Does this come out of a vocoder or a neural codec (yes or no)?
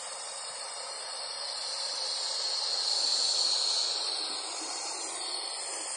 no